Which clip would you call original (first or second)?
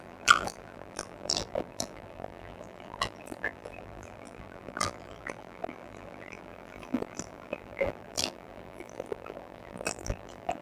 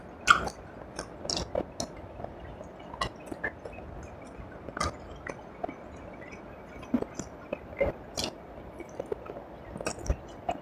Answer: second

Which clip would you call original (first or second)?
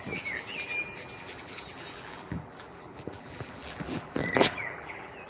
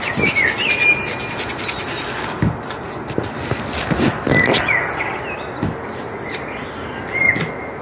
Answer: second